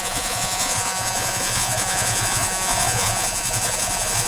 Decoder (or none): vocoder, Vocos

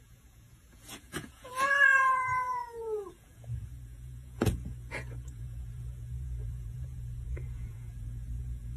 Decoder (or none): vocoder, Vocos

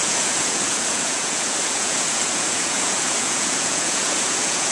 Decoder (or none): vocoder, Vocos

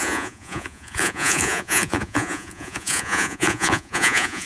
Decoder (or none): vocoder, Vocos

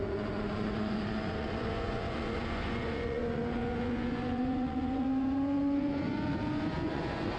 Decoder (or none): vocoder, Vocos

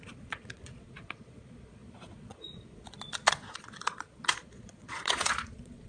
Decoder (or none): vocoder, Vocos